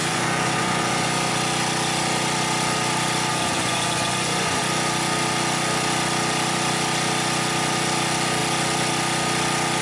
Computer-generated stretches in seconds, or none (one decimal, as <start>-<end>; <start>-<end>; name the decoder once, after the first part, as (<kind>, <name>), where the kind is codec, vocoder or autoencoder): 0.0-1.3 (vocoder, Vocos); 3.3-4.6